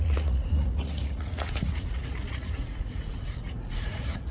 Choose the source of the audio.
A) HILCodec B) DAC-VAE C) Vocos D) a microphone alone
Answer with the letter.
C